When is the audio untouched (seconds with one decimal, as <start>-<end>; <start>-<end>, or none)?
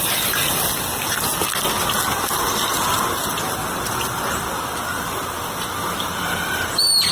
0.0-7.1